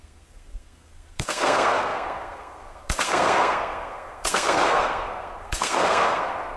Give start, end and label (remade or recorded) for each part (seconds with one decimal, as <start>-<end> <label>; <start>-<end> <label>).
0.0-6.6 remade